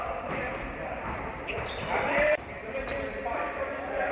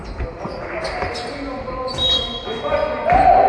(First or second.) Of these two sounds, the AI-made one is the first